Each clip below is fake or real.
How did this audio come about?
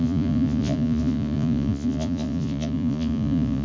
fake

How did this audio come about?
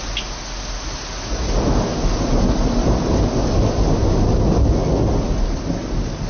real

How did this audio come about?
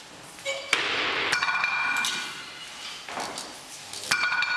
real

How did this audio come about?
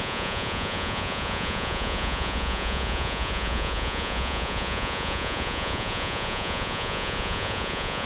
fake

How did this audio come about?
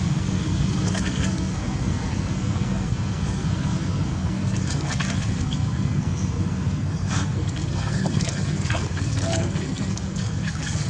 fake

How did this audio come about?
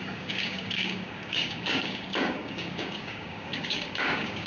fake